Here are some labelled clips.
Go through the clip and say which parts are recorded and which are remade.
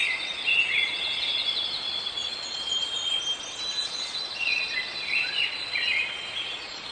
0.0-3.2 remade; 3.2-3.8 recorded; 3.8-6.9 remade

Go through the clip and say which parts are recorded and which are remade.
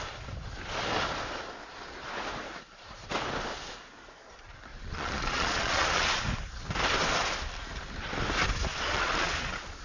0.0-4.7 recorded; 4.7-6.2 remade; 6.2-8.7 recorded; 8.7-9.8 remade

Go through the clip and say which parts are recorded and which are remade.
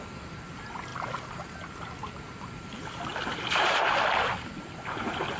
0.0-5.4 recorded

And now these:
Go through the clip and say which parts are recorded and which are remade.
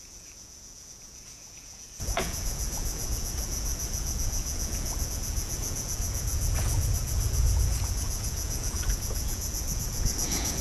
0.0-10.6 remade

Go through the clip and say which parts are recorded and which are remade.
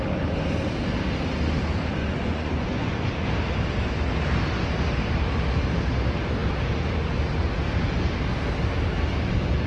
0.0-2.0 recorded; 2.0-3.1 remade; 3.1-9.7 recorded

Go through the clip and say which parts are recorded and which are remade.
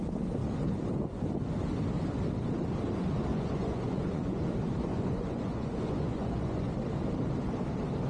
0.0-3.3 recorded; 3.3-4.5 remade; 4.5-4.9 recorded; 4.9-6.7 remade; 6.7-8.1 recorded